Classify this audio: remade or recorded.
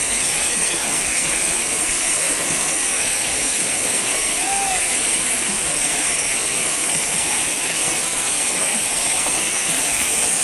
remade